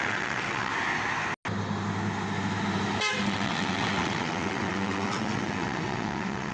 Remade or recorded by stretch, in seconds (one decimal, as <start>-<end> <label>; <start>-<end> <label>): 0.0-0.7 remade; 0.7-3.2 recorded; 3.2-6.5 remade